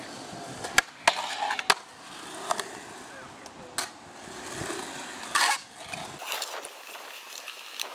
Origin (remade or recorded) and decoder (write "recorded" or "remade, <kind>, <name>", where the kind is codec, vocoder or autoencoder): recorded